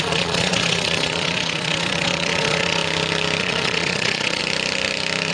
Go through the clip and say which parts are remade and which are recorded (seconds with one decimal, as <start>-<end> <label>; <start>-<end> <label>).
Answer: 0.0-2.8 remade; 2.8-3.4 recorded; 3.4-4.4 remade; 4.4-5.3 recorded